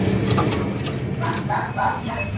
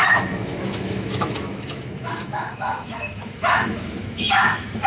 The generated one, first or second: second